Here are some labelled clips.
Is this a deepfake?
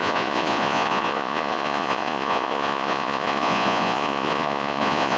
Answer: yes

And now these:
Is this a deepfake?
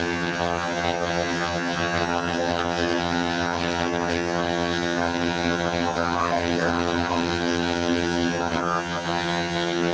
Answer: yes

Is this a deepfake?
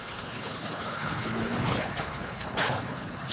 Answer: yes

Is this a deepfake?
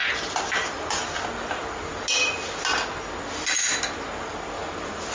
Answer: no